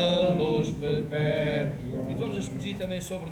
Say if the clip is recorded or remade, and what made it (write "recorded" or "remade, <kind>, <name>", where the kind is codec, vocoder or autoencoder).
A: remade, autoencoder, DAC-VAE